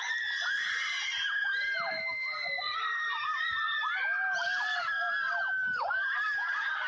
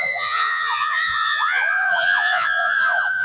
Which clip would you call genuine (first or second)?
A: first